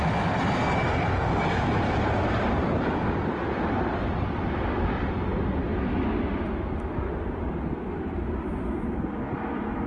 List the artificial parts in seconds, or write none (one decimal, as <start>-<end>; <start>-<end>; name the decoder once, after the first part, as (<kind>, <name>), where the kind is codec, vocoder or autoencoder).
none